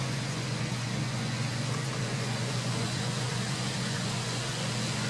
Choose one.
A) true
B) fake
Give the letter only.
B